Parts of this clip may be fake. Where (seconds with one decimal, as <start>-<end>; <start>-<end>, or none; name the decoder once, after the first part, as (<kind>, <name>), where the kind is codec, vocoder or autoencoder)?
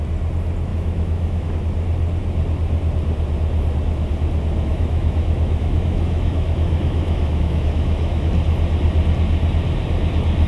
0.7-1.5 (autoencoder, DAC-VAE); 4.7-8.3